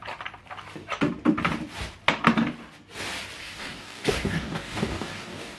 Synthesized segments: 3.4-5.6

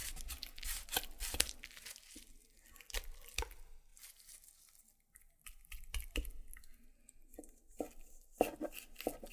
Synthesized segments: none

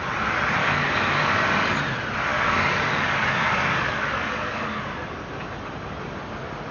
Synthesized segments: 0.6-1.8; 2.3-4.8